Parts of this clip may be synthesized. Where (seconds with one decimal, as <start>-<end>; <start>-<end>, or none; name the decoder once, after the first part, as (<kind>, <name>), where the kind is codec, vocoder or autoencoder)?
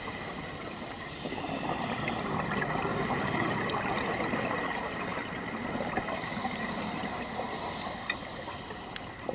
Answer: 2.9-3.5 (codec, DAC)